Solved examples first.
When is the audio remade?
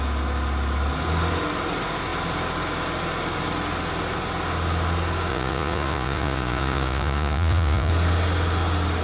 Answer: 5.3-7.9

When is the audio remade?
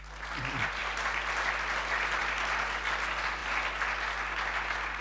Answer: none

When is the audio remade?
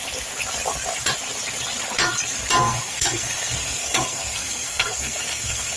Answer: 2.6-5.8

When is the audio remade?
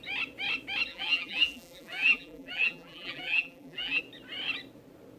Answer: 0.9-4.0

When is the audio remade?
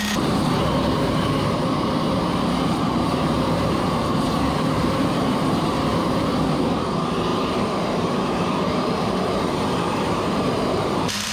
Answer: 0.0-11.3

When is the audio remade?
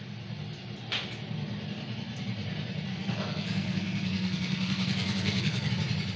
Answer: 2.9-5.7